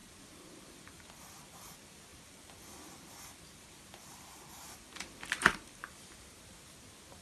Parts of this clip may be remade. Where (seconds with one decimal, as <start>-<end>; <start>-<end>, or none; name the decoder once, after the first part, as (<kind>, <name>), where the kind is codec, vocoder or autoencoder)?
0.0-1.3 (vocoder, BigVGAN v2); 2.1-6.4